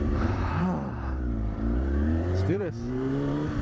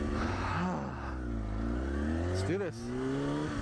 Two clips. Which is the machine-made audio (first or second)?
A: first